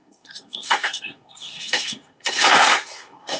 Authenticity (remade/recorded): remade